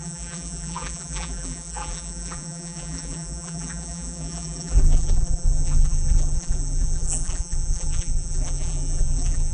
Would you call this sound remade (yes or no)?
yes